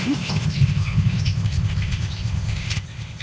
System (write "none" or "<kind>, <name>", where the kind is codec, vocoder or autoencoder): codec, ZipCodec